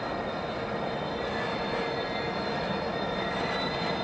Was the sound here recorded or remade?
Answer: recorded